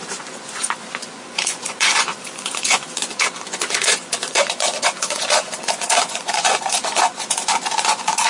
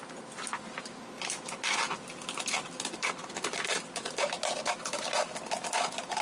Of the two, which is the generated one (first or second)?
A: first